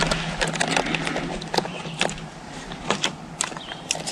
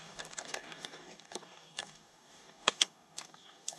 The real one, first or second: first